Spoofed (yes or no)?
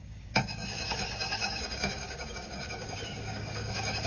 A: yes